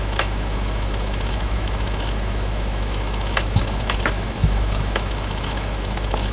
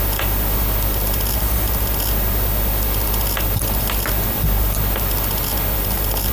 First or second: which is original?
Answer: second